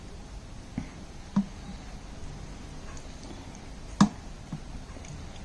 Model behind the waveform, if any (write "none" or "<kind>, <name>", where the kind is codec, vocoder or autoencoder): none